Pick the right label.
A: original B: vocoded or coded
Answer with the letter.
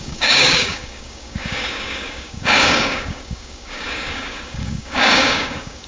B